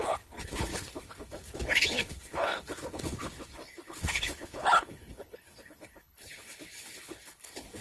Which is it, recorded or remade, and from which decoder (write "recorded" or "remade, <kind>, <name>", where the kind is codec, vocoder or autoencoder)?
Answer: remade, codec, HILCodec